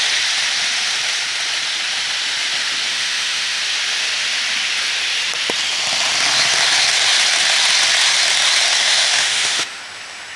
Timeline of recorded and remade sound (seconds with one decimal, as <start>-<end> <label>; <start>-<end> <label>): 0.0-2.9 recorded; 2.9-3.6 remade; 3.6-8.8 recorded; 8.8-9.8 remade; 9.8-10.4 recorded